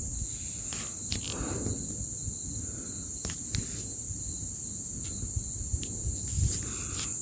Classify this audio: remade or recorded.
recorded